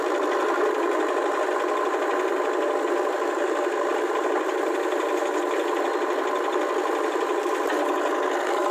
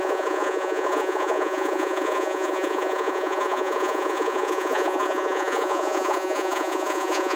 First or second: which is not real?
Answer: second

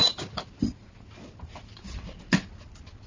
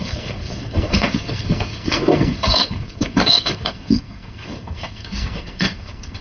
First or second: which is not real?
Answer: second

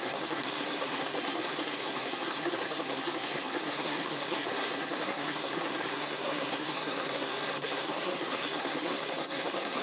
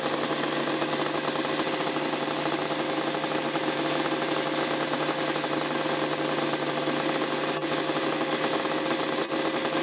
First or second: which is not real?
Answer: first